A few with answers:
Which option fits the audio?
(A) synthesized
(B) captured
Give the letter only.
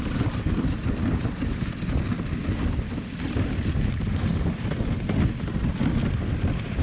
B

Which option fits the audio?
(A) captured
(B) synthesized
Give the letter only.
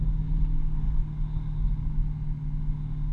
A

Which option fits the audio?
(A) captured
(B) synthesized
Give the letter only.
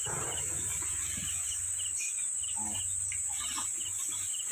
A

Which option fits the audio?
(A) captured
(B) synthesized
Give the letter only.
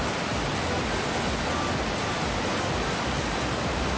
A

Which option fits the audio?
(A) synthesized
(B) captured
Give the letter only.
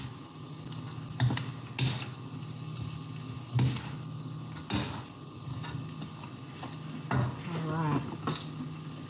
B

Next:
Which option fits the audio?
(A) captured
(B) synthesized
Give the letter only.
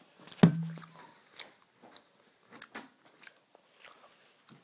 A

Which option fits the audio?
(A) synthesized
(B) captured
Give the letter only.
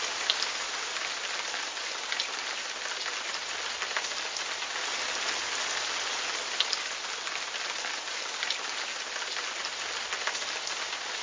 B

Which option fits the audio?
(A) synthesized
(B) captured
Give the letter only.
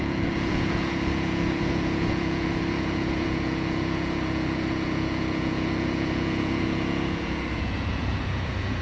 A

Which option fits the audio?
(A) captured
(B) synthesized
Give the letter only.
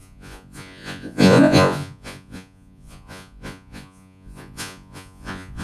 B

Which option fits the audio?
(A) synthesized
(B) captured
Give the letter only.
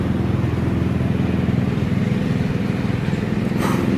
B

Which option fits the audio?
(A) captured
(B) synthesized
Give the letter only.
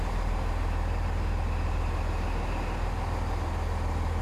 A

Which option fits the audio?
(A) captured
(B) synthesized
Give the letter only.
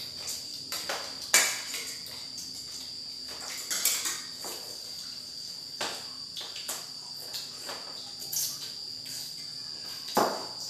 A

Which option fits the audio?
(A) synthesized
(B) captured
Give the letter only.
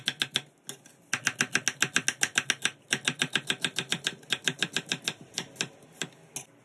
B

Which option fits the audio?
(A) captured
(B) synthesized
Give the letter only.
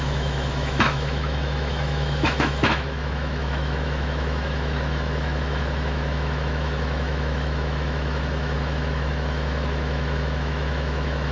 B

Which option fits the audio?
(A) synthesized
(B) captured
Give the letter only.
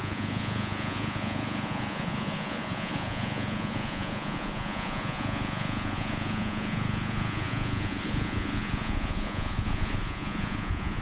A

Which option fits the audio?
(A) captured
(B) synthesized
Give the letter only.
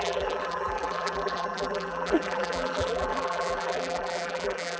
B